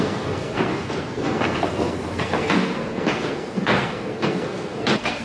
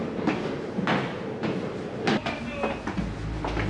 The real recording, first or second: second